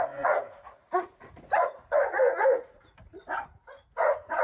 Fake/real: fake